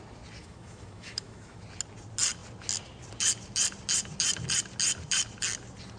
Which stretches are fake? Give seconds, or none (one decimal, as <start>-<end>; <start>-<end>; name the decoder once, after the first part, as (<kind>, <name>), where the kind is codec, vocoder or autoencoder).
0.4-1.6 (autoencoder, DAC-VAE)